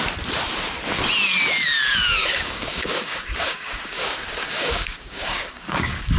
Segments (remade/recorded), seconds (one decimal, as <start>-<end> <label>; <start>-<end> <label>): 0.0-2.2 recorded; 2.2-6.2 remade